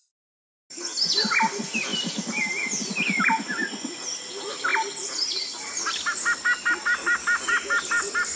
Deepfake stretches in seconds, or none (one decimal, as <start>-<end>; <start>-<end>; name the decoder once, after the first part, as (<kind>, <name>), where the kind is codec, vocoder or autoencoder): none